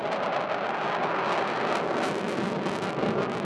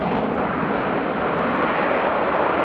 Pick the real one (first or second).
first